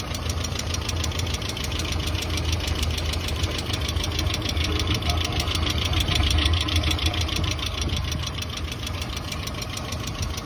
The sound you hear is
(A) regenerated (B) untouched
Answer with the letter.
A